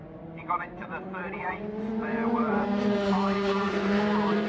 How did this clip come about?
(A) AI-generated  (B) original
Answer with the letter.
A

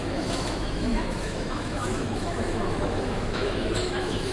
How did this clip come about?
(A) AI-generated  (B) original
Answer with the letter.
A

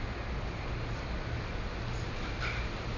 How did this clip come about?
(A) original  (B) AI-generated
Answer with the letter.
A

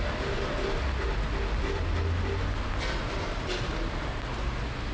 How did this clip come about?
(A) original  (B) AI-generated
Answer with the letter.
A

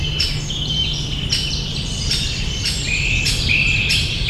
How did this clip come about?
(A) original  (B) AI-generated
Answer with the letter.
A